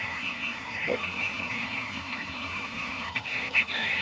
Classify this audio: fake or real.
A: fake